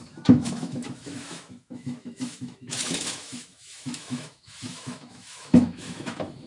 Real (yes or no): no